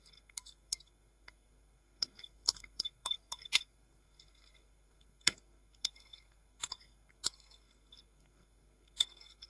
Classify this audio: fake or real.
fake